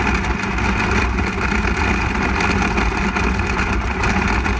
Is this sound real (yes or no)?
yes